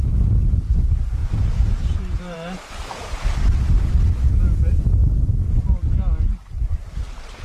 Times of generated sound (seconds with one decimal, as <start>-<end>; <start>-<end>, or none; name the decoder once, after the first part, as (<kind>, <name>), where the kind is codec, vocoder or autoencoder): 1.2-2.7 (vocoder, BigVGAN v2)